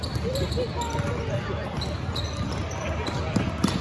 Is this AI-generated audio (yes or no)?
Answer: no